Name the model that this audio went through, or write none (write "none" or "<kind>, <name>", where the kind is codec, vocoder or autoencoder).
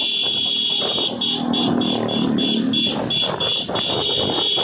none